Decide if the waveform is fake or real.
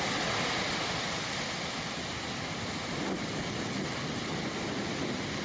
real